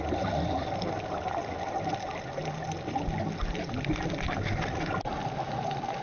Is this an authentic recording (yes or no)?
yes